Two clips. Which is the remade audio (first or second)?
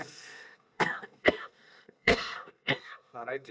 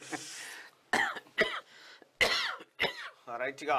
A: first